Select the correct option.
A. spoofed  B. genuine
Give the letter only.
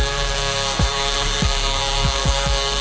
A